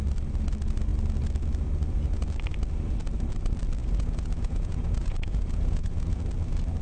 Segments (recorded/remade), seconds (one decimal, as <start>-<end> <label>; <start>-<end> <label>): 0.0-3.8 recorded; 3.8-6.2 remade; 6.2-6.8 recorded